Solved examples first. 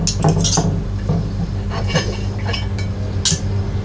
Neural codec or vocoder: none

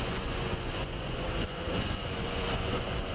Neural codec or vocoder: vocoder, Vocos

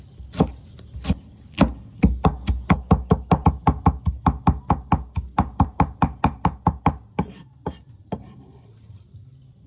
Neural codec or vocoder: none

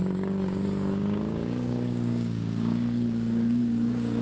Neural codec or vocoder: codec, DAC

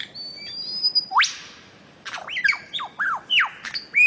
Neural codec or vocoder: none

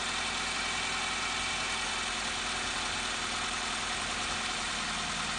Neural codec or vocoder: none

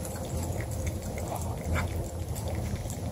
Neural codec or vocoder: vocoder, BigVGAN v2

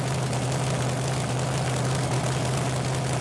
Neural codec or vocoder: none